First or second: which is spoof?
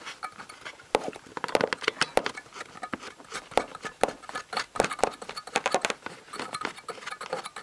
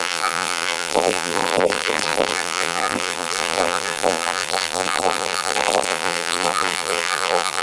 second